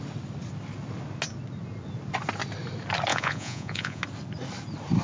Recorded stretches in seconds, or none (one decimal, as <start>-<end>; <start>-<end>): 0.0-3.1; 4.0-5.0

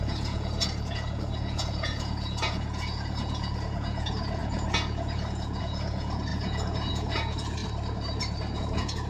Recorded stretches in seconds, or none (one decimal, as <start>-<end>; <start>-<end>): 7.6-8.6

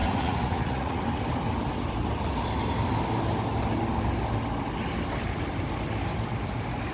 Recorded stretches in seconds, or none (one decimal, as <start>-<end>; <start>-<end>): 1.0-6.9